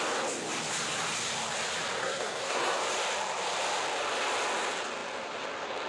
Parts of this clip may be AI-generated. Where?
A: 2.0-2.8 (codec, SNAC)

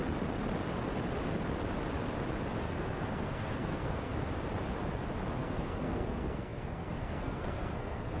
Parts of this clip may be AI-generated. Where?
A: 2.6-4.1 (codec, SNAC); 5.4-8.2

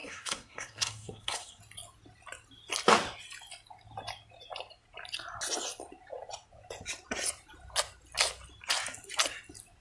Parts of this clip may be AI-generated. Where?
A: 0.0-1.6 (codec, SNAC)

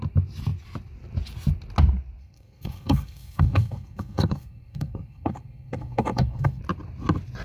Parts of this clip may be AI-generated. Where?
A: 2.2-6.6 (codec, SNAC)

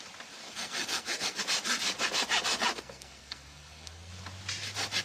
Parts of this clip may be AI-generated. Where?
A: 0.4-1.4 (codec, SNAC); 2.7-4.1